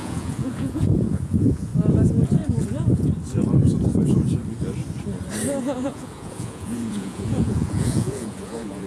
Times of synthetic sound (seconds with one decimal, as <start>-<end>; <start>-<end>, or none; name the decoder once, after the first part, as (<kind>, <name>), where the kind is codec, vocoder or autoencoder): 0.0-1.7 (vocoder, Vocos); 2.6-3.1; 5.6-8.9